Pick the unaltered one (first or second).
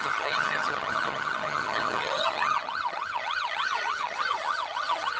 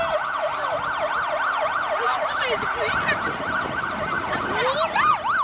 second